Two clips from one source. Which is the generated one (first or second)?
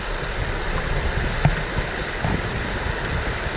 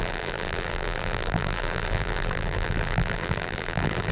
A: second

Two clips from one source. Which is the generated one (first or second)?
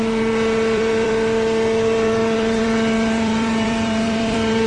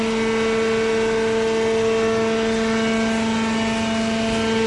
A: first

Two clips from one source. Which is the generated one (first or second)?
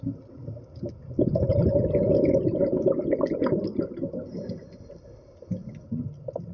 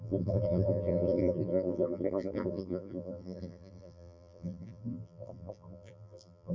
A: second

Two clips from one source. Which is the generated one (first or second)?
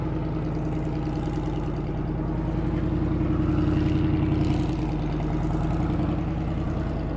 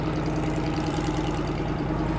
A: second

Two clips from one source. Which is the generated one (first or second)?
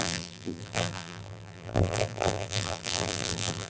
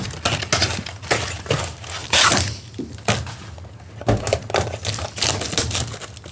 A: first